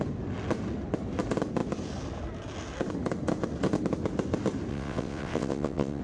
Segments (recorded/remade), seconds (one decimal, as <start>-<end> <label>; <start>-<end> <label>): 0.0-4.7 recorded; 4.7-6.0 remade